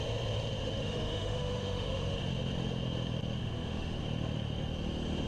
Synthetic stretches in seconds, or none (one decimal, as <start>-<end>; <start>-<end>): 0.6-2.2; 3.4-4.0